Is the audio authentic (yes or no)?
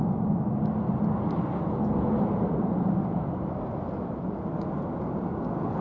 yes